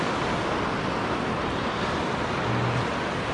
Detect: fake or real real